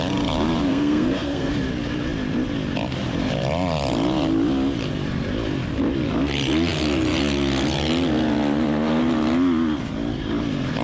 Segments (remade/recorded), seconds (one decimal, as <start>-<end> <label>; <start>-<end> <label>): 0.0-0.7 recorded; 0.7-1.5 remade; 1.5-10.8 recorded

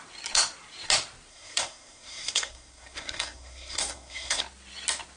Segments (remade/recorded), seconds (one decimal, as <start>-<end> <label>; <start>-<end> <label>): 0.0-1.3 recorded; 1.3-4.4 remade; 4.4-5.2 recorded

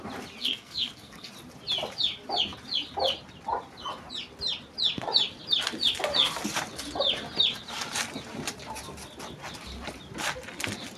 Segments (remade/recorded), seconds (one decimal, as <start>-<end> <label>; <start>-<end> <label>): 0.0-0.4 recorded; 0.4-1.3 remade; 1.3-11.0 recorded

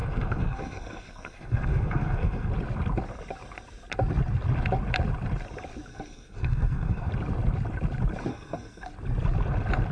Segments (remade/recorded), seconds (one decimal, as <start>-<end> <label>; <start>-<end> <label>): 0.0-2.5 remade; 2.5-5.9 recorded; 5.9-7.1 remade; 7.1-8.3 recorded; 8.3-8.9 remade; 8.9-9.9 recorded

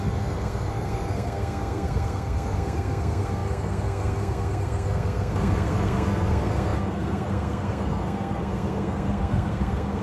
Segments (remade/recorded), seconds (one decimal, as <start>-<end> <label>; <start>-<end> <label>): 0.0-10.0 remade

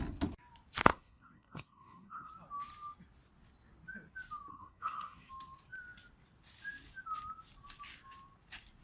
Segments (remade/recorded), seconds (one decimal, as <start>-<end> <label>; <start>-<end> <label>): 0.0-0.9 recorded; 0.9-2.3 remade; 2.3-4.5 recorded; 4.5-5.3 remade; 5.3-8.8 recorded